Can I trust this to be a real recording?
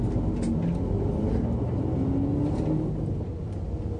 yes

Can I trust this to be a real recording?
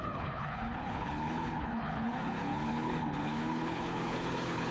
no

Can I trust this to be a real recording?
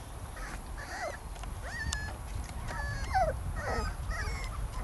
yes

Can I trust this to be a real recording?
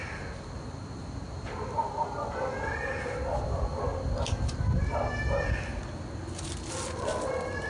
yes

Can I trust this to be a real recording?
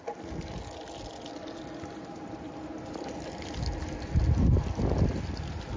yes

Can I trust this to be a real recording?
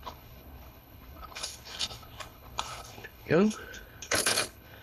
no